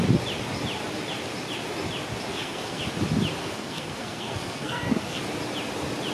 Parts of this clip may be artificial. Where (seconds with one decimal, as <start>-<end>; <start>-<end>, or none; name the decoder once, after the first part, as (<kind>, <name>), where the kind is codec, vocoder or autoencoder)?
2.3-2.8 (codec, SNAC); 3.4-5.2

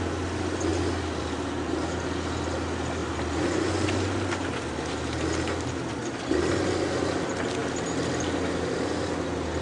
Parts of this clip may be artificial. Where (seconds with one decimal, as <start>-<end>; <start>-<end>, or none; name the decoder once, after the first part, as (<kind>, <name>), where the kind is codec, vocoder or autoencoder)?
none

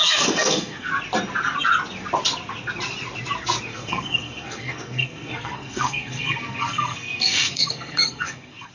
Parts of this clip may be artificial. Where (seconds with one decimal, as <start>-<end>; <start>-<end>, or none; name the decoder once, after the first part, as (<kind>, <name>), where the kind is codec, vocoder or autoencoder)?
0.0-0.9 (codec, SNAC); 3.7-8.7

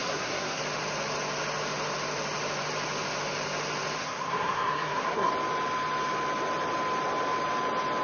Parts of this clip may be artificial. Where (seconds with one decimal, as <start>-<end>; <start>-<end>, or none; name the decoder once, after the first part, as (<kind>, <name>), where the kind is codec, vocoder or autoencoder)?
0.0-0.6 (codec, SNAC); 4.0-5.3

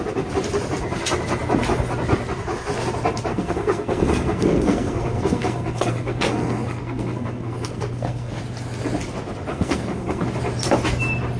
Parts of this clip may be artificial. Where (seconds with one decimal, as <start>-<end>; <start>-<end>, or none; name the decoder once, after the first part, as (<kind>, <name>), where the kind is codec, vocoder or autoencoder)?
3.3-8.4 (codec, SNAC); 9.5-10.2

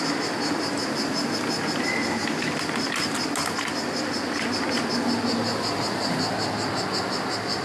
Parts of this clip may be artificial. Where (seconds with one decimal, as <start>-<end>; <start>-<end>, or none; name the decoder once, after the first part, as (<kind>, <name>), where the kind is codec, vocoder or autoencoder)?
none